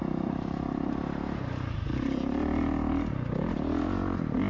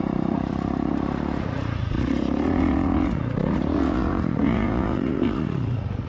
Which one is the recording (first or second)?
first